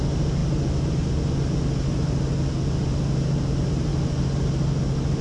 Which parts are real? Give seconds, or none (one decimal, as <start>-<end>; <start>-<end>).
0.0-5.2